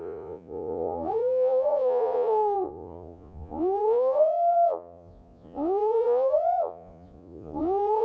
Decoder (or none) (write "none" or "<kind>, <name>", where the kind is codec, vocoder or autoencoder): vocoder, Vocos